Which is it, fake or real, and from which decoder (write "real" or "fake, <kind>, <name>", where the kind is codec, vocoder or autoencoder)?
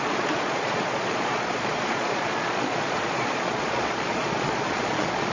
fake, vocoder, Vocos